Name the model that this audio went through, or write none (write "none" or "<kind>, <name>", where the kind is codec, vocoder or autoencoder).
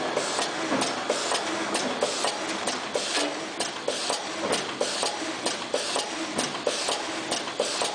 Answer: none